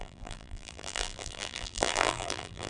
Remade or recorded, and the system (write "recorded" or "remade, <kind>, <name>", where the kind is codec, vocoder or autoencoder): remade, vocoder, BigVGAN v2